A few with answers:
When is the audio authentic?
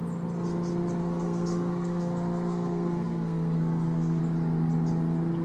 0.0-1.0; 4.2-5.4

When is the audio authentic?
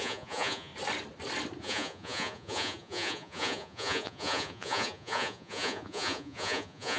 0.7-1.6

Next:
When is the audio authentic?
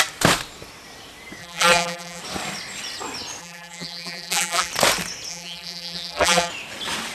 0.0-1.4; 2.2-3.4; 4.7-5.3; 6.5-7.1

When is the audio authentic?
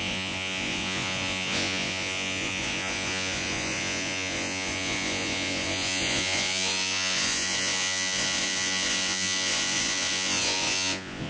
none